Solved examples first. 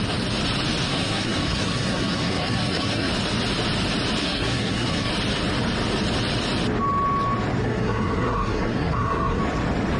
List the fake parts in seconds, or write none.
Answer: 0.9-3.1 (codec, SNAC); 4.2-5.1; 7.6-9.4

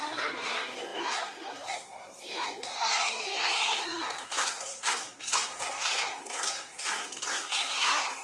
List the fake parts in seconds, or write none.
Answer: 0.0-8.2 (codec, SNAC)

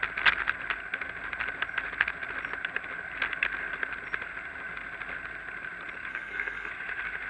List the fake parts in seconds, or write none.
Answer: 6.1-6.7 (codec, SNAC)

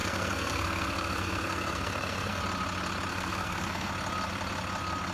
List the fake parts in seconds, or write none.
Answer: 0.0-2.4 (codec, SNAC); 3.1-3.9

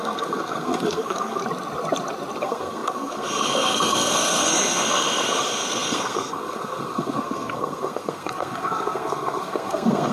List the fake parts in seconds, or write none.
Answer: 0.0-1.4 (codec, SNAC); 2.4-10.1